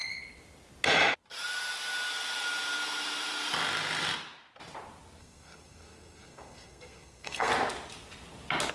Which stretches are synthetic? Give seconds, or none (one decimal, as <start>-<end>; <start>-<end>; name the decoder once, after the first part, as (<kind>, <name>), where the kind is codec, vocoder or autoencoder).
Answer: 5.2-7.5 (codec, SNAC)